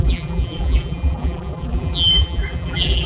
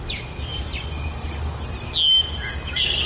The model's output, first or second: first